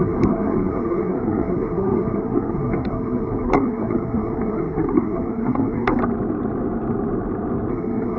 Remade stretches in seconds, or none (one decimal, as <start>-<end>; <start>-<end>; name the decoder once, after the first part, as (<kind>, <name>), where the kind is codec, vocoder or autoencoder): 0.0-6.0 (codec, SNAC); 7.7-8.2